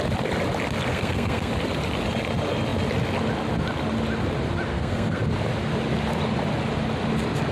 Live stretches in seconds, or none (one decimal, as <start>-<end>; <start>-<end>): 0.0-0.9; 1.5-4.7; 5.2-7.5